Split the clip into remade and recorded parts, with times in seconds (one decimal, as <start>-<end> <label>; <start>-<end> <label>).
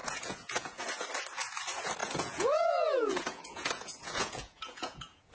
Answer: 0.0-0.9 remade; 0.9-2.0 recorded; 2.0-5.3 remade